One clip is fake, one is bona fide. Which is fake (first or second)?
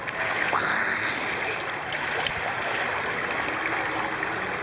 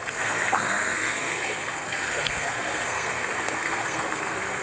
second